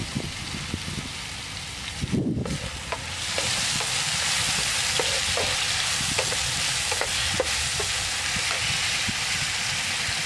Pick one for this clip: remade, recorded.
recorded